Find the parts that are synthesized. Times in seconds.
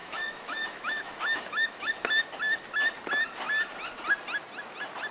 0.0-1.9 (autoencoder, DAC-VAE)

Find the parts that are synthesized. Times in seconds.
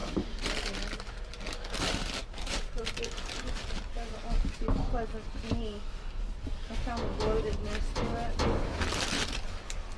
0.0-0.6 (vocoder, BigVGAN v2); 2.2-2.8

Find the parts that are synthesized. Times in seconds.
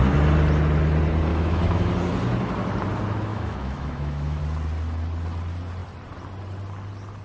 1.3-1.9 (autoencoder, DAC-VAE); 3.3-4.4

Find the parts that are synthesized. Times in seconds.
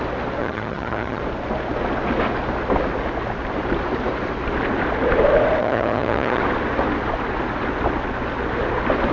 0.4-1.2 (vocoder, HiFi-GAN); 5.6-6.4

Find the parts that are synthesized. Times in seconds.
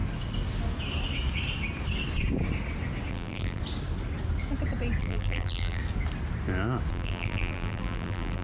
3.1-3.6 (vocoder, BigVGAN v2); 5.0-5.8; 6.9-8.4